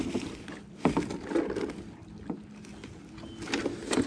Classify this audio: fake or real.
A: real